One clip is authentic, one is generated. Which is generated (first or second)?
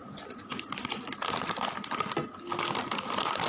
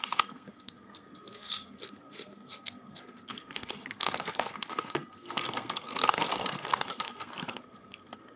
second